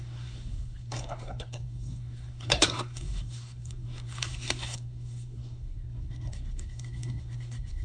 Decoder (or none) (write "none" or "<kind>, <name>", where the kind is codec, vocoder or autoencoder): codec, SNAC